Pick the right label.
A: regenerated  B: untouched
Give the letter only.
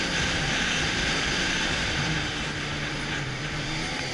A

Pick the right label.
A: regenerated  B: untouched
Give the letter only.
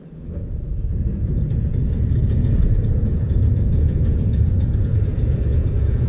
A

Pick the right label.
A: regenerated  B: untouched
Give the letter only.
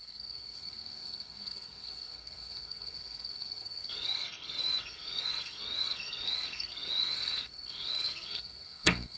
A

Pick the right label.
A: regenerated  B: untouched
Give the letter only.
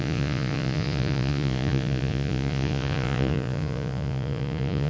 A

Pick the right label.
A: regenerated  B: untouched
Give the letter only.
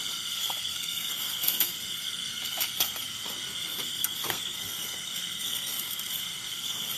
A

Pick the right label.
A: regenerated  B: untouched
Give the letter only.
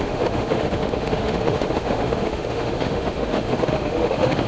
A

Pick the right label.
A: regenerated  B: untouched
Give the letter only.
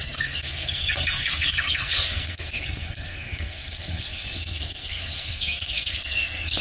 A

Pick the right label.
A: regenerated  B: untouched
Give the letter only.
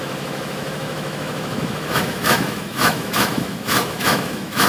A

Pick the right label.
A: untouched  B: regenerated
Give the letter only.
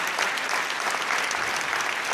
A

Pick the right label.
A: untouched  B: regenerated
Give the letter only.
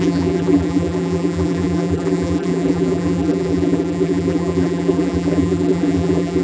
B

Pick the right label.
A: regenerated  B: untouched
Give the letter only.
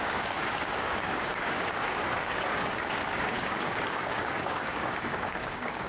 A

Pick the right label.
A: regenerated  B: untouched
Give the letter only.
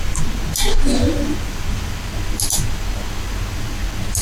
B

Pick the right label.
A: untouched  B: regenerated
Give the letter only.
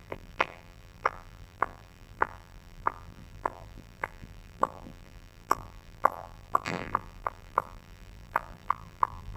B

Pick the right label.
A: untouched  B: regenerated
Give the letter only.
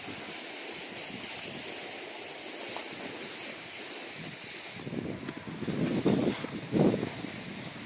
A